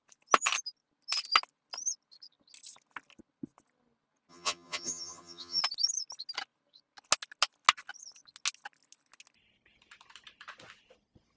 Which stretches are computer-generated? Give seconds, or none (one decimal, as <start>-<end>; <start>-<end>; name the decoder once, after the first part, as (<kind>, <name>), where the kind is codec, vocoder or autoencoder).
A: 4.3-5.6 (vocoder, HiFi-GAN)